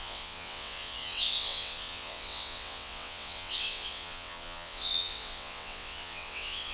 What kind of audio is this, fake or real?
fake